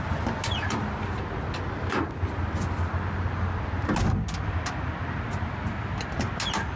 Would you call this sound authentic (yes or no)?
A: yes